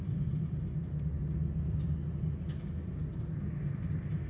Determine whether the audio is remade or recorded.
recorded